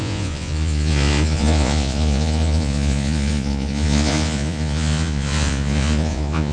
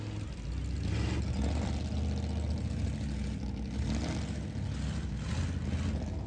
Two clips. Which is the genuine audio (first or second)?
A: second